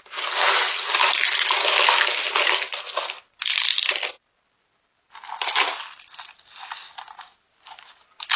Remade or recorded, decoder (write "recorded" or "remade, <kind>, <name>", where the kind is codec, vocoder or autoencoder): recorded